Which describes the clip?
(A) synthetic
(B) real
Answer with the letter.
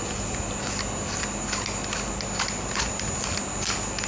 B